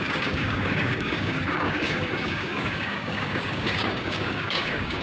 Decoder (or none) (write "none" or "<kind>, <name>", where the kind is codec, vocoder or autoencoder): codec, DAC